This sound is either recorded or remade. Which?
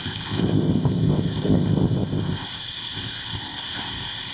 remade